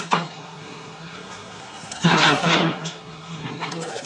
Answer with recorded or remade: remade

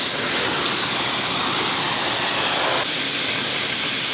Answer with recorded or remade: recorded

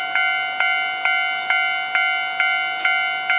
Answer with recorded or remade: recorded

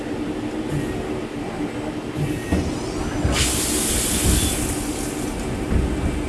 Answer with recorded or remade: recorded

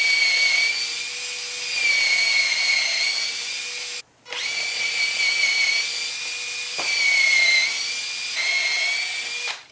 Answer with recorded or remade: recorded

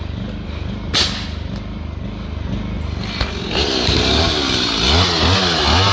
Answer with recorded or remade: recorded